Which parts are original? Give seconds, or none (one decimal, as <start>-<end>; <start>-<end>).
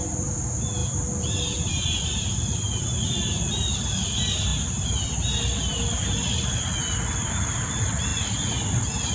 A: 0.0-9.1